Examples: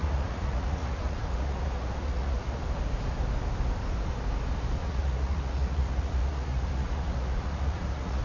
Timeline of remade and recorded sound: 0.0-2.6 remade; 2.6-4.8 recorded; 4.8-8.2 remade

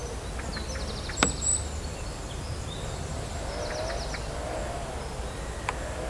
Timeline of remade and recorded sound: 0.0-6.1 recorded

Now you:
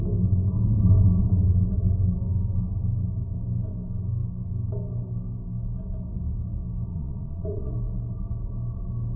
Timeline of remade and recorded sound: 0.0-6.9 recorded; 6.9-7.7 remade; 7.7-9.2 recorded